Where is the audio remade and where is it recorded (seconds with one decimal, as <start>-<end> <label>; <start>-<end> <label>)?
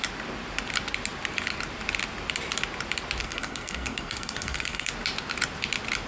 0.0-3.2 recorded; 3.2-4.9 remade; 4.9-6.1 recorded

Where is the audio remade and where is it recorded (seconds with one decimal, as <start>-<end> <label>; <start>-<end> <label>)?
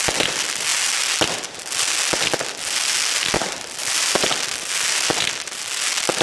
0.0-6.2 recorded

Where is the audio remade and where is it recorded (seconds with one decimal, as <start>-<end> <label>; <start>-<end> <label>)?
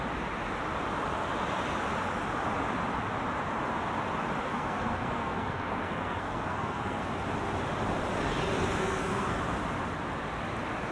0.0-4.4 recorded; 4.4-7.1 remade; 7.1-8.8 recorded; 8.8-9.4 remade; 9.4-10.9 recorded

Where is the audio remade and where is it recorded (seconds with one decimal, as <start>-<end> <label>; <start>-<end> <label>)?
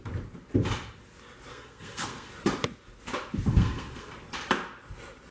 0.0-1.5 recorded; 1.5-2.3 remade; 2.3-3.5 recorded; 3.5-4.1 remade; 4.1-5.3 recorded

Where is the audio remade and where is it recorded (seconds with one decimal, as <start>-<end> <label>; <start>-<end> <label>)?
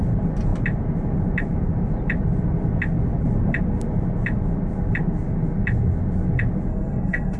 0.0-6.7 recorded; 6.7-7.4 remade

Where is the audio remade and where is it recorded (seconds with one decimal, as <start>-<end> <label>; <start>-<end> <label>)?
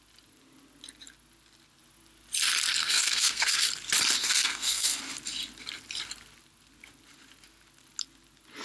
0.0-2.8 recorded; 2.8-3.7 remade; 3.7-4.2 recorded; 4.2-5.0 remade; 5.0-8.6 recorded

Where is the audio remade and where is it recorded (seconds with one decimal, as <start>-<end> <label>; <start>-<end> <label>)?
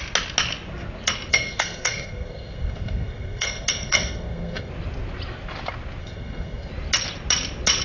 0.0-1.3 recorded; 1.3-4.7 remade; 4.7-6.0 recorded; 6.0-6.7 remade; 6.7-7.8 recorded